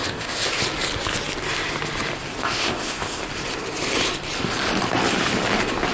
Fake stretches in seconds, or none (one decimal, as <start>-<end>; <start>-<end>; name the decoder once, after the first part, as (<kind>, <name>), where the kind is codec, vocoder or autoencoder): 0.0-0.6 (codec, ZipCodec); 2.4-3.2